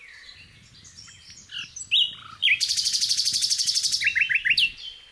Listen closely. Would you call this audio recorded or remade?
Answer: recorded